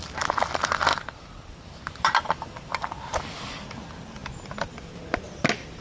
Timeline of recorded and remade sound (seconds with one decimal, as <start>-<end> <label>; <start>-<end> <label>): 0.0-5.8 recorded